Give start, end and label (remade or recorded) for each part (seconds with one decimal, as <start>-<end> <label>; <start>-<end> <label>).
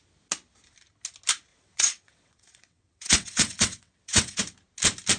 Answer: 0.0-1.5 recorded; 1.5-4.4 remade; 4.4-5.2 recorded